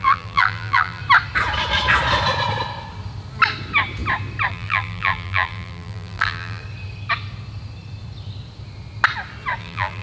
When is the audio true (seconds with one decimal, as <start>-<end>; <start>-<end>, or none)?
1.0-4.5; 6.6-9.6